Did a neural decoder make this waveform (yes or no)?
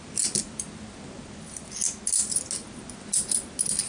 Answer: no